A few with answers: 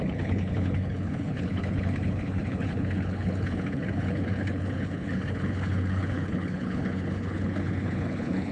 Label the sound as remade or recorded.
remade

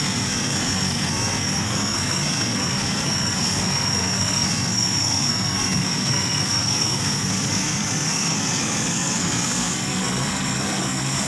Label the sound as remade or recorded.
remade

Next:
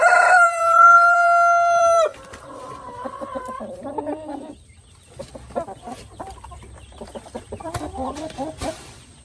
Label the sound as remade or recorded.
remade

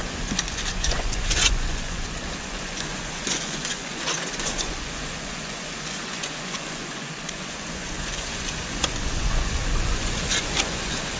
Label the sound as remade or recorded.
remade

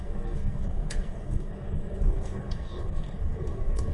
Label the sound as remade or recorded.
remade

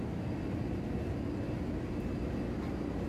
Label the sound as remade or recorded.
recorded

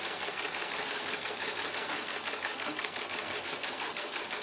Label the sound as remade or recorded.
remade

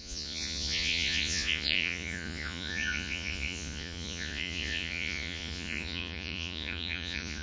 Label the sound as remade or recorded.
remade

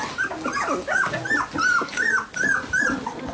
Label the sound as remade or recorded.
recorded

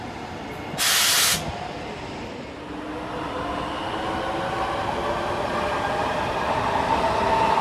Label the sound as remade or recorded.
recorded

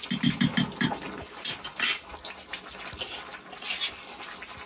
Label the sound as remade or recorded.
recorded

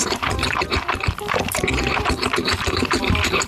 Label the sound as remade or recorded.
remade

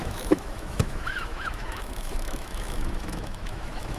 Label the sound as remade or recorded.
remade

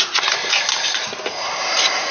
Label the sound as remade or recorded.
recorded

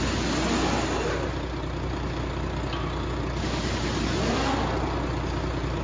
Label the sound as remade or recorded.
recorded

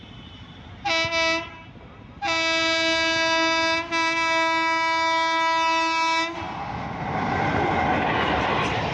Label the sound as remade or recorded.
recorded